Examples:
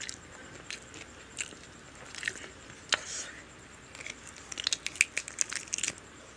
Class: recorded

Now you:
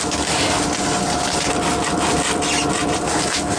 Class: recorded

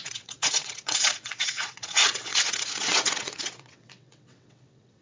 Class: remade